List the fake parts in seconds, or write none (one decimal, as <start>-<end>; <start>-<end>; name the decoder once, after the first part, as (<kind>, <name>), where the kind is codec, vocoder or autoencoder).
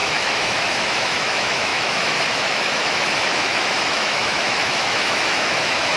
0.0-6.0 (autoencoder, DAC-VAE)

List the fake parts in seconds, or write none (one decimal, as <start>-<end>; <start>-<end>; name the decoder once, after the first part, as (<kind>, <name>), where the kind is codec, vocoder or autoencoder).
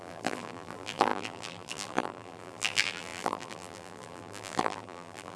0.0-5.4 (vocoder, BigVGAN v2)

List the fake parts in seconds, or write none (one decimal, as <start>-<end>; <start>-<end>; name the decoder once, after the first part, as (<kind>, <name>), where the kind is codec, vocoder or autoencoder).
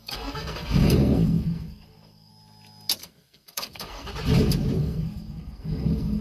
0.0-2.3 (codec, SNAC); 3.0-4.1; 4.8-6.2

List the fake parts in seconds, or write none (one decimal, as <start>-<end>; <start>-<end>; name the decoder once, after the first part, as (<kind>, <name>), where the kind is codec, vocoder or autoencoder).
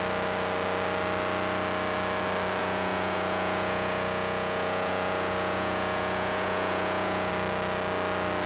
2.6-7.3 (vocoder, Vocos)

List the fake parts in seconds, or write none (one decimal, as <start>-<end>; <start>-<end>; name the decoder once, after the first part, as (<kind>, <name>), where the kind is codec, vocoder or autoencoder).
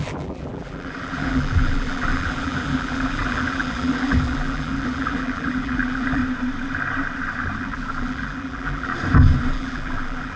0.0-6.2 (vocoder, BigVGAN v2); 7.6-8.9; 9.5-10.4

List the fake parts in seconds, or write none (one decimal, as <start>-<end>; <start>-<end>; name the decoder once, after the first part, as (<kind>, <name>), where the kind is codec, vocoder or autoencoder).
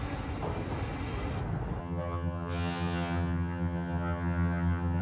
1.8-5.0 (vocoder, HiFi-GAN)